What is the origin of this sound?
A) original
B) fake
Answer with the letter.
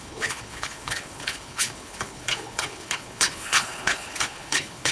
B